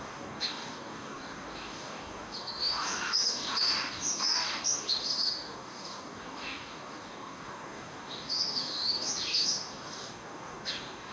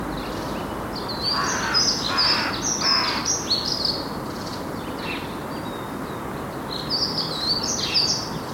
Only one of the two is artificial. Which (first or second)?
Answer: first